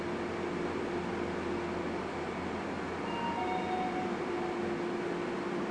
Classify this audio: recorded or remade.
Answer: recorded